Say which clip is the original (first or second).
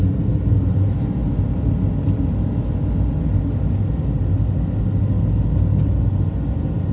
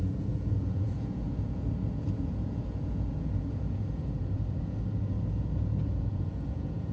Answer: first